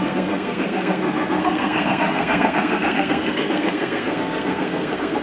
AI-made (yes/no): yes